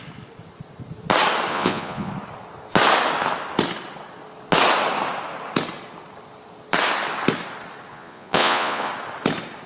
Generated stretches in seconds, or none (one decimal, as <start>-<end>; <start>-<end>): 1.5-2.1; 7.9-8.9